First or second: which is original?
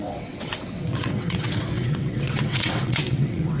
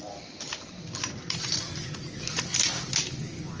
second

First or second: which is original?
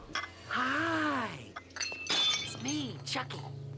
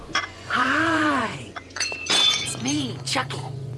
first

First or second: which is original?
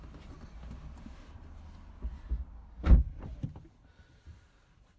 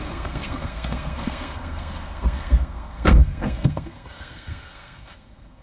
first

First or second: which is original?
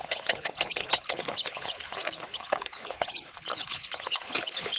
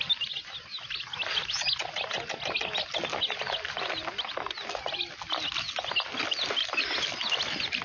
second